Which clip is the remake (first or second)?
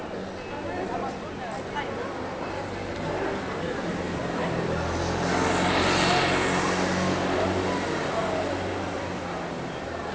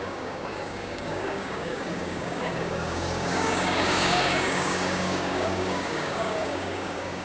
second